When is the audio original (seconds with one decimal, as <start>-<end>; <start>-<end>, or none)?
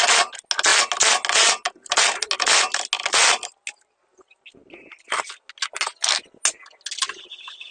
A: 0.0-7.7